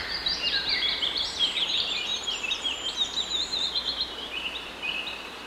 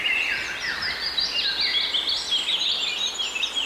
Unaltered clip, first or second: second